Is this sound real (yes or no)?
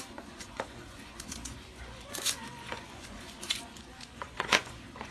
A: no